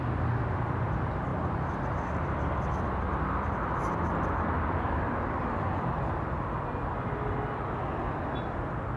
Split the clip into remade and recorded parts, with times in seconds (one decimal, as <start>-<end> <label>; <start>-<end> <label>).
0.0-9.0 recorded